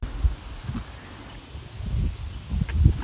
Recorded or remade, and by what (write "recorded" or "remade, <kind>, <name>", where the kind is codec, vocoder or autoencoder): recorded